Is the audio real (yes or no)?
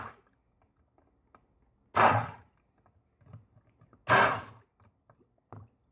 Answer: yes